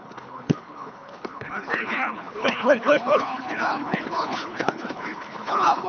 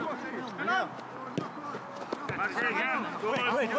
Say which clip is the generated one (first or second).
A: first